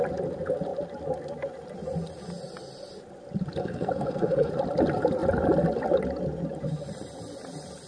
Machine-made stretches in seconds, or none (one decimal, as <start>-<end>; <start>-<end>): 3.6-4.5